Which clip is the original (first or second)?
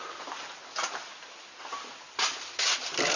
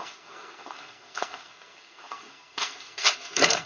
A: first